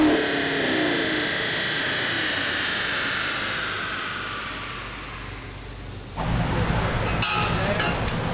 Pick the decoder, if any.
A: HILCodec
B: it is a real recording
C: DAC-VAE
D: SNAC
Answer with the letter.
B